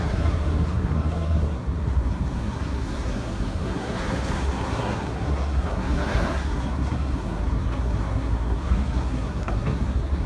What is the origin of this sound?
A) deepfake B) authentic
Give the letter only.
A